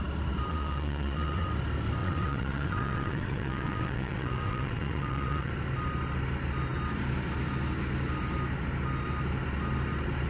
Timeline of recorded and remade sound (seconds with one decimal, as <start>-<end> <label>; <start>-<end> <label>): 0.0-0.5 recorded; 0.5-1.5 remade; 1.5-2.0 recorded; 2.0-5.5 remade; 5.5-10.3 recorded